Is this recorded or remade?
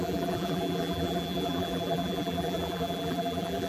remade